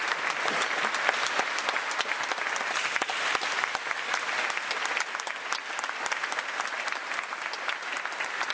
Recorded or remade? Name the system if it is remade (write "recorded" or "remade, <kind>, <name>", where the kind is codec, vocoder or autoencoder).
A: recorded